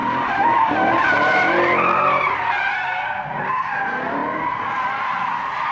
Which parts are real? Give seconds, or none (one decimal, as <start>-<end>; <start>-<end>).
3.4-5.7